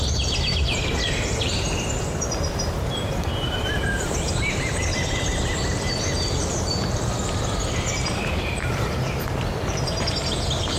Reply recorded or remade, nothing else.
remade